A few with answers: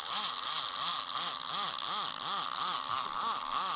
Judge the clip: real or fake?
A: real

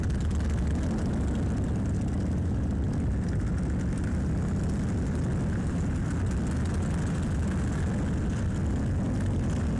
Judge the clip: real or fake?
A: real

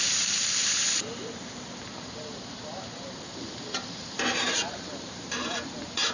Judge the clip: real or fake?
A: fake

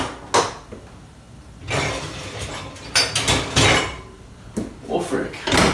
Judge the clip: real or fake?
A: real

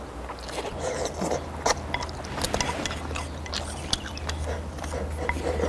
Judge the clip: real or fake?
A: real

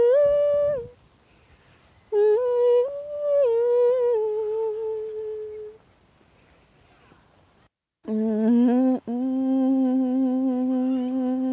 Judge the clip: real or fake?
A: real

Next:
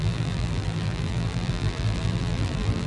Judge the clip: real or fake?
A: fake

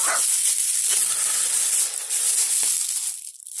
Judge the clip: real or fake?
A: real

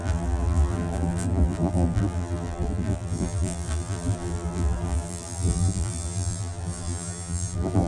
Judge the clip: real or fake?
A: fake